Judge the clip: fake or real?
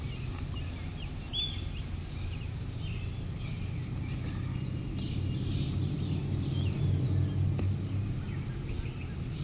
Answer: real